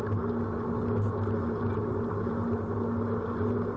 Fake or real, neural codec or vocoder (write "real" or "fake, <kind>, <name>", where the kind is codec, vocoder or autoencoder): real